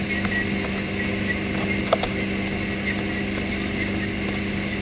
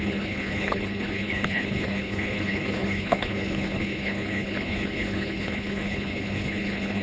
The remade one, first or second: second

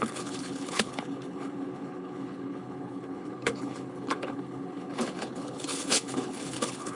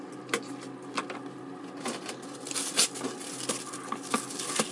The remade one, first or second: first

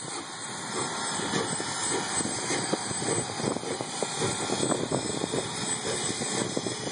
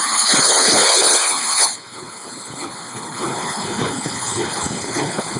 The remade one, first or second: second